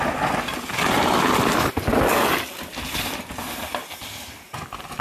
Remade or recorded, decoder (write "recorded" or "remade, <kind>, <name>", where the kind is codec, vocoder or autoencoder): recorded